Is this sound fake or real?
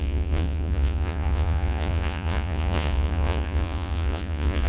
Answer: fake